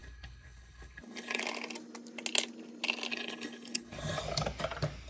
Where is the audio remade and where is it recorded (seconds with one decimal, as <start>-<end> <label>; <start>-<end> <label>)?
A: 0.0-1.4 remade; 1.4-3.1 recorded; 3.1-4.2 remade; 4.2-5.1 recorded